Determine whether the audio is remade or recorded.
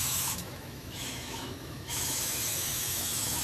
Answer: remade